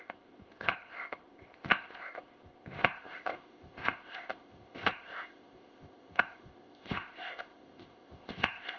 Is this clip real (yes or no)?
no